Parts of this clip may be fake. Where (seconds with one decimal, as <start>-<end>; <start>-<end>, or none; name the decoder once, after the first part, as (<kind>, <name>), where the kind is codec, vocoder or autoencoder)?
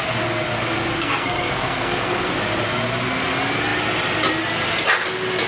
1.0-2.3 (codec, SNAC)